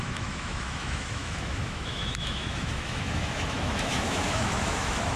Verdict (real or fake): fake